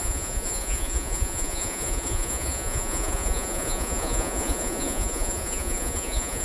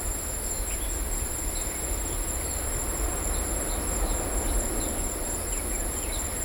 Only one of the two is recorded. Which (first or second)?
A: second